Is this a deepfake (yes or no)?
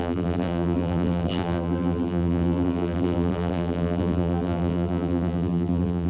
yes